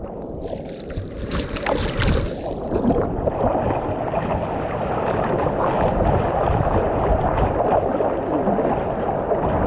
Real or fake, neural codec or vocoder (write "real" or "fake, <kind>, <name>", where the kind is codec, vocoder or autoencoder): real